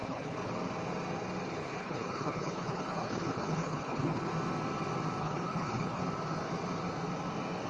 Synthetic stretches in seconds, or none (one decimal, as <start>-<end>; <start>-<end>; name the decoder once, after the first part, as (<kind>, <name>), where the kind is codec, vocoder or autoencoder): 0.0-0.5 (codec, HILCodec); 1.6-4.3; 5.2-6.0